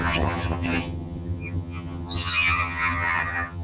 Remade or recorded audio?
remade